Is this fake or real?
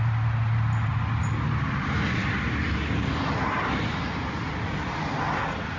real